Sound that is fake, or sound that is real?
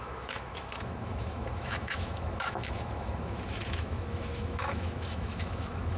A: fake